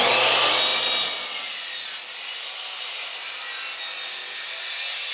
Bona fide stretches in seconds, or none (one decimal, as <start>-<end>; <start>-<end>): 0.0-5.1